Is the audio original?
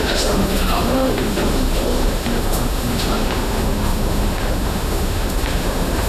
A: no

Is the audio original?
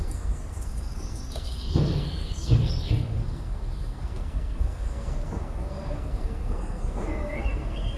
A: no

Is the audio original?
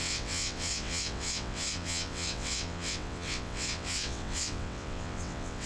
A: no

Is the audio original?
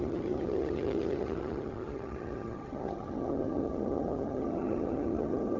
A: no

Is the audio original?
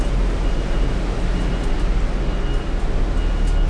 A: yes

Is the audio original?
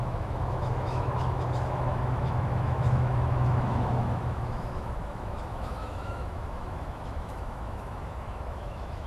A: no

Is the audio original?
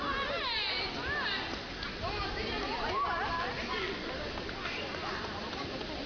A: yes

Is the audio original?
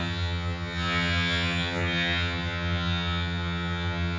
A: no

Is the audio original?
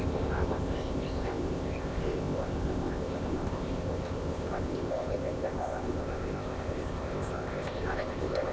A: no